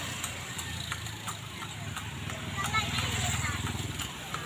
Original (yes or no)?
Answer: yes